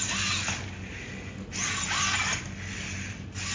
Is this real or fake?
real